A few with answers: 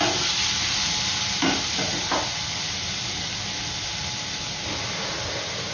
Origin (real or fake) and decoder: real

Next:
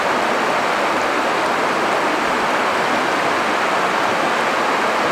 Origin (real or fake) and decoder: real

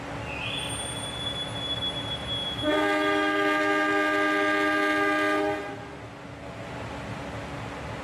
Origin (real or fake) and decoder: real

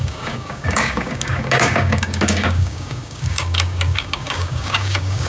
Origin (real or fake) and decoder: fake, codec, DAC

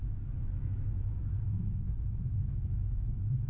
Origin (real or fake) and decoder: fake, autoencoder, DAC-VAE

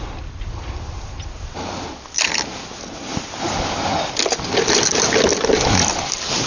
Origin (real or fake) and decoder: real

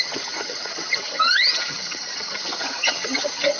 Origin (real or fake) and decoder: fake, vocoder, HiFi-GAN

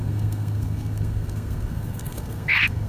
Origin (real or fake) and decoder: fake, codec, SNAC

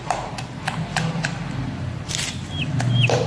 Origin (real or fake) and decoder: fake, vocoder, BigVGAN v2